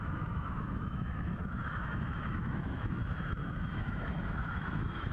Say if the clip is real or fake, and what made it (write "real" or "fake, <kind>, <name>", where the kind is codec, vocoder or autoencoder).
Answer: fake, autoencoder, DAC-VAE